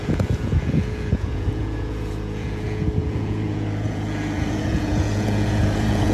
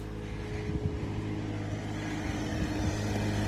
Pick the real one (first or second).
second